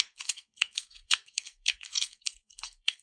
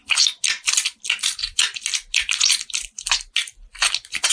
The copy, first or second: first